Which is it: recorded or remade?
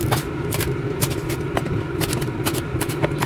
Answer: remade